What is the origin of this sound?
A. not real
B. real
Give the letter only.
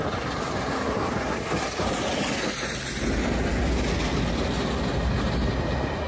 B